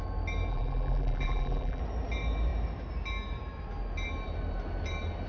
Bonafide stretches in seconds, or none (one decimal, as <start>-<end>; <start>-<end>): 0.0-0.5; 1.8-5.3